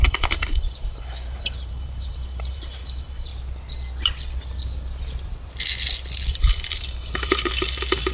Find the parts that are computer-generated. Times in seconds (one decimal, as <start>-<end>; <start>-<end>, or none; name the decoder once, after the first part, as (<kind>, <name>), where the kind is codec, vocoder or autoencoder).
0.0-3.3 (vocoder, BigVGAN v2); 6.3-8.1